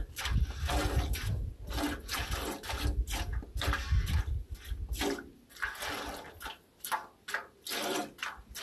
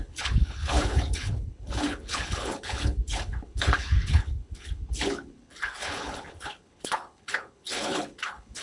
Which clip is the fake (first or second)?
second